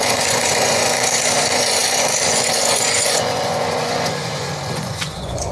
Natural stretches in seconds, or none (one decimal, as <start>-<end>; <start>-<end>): none